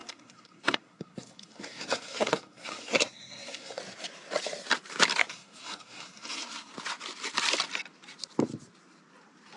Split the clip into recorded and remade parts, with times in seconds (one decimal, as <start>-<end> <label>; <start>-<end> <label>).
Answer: 0.0-3.8 remade; 3.8-5.2 recorded; 5.2-6.7 remade; 6.7-9.6 recorded